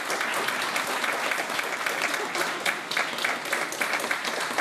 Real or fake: real